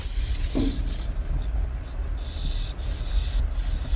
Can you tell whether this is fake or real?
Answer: real